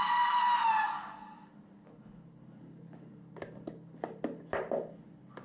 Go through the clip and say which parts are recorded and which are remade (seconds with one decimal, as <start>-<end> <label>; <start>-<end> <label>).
0.0-5.4 recorded